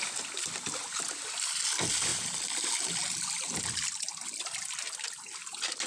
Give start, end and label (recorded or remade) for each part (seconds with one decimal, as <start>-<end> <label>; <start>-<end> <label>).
0.0-5.9 recorded